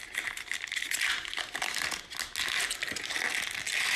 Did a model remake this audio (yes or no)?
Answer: no